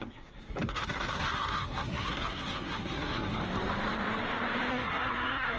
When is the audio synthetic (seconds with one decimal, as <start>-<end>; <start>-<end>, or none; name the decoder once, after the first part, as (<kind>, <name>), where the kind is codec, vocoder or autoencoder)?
0.0-3.4 (codec, SNAC); 4.7-5.6